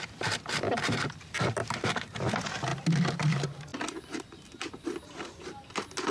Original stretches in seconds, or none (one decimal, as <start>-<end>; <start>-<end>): 2.7-3.3; 3.7-4.7